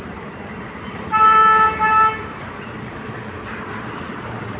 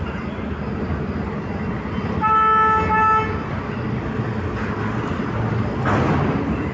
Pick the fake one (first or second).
first